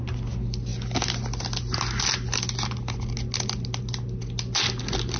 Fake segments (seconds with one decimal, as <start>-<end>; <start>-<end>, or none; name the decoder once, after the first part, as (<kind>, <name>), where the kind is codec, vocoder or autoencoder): none